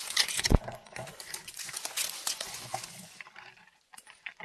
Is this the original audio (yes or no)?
no